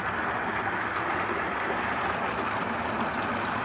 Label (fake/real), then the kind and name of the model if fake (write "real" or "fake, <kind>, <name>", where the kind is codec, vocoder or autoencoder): real